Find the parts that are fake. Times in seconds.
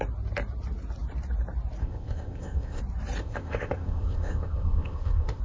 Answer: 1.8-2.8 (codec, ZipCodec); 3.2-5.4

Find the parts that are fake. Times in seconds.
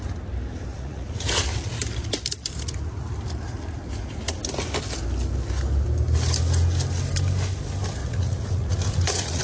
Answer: 0.7-1.4 (vocoder, Vocos); 8.0-9.4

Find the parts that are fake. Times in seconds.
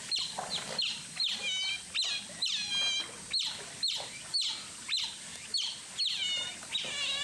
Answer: none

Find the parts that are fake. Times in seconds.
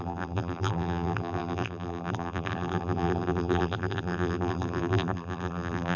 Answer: 0.0-6.0 (vocoder, BigVGAN v2)